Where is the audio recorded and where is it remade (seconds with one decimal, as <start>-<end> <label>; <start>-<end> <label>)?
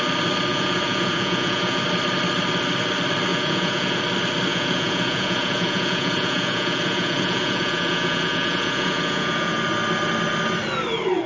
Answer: 0.0-0.5 recorded; 0.5-1.8 remade; 1.8-3.3 recorded; 3.3-4.0 remade; 4.0-4.5 recorded; 4.5-9.6 remade; 9.6-11.3 recorded